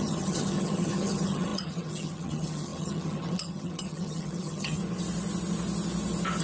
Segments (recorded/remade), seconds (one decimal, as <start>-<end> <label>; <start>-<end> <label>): 0.0-4.8 remade; 4.8-6.4 recorded